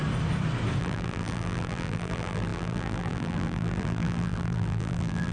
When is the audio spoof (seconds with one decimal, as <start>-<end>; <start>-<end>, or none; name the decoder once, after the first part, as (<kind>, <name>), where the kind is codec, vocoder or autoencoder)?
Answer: 0.8-5.3 (vocoder, BigVGAN v2)